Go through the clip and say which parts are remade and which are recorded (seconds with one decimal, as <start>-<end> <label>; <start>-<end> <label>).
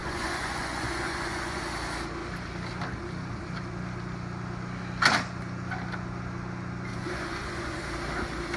0.0-1.6 remade; 1.6-6.9 recorded; 6.9-7.8 remade; 7.8-8.6 recorded